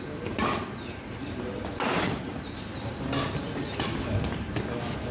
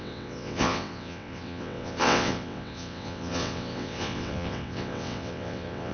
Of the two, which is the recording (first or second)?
first